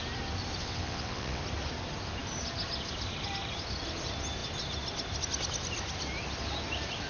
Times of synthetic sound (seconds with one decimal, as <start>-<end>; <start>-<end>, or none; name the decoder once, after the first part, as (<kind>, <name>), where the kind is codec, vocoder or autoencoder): 0.6-1.4 (vocoder, WaveNeXt)